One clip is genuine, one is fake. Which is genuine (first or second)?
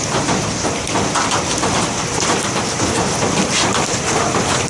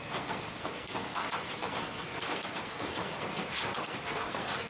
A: first